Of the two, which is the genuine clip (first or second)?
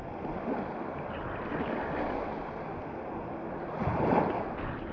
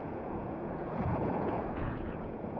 first